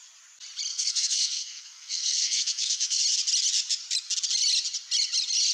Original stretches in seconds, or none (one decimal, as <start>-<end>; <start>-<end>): 0.0-0.7; 3.0-5.5